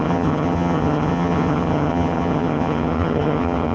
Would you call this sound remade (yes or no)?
yes